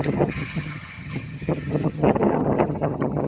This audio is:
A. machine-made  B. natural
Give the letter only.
A